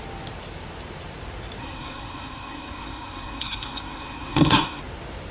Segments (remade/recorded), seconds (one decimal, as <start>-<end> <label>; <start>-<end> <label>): 0.0-1.6 recorded; 1.6-4.8 remade; 4.8-5.3 recorded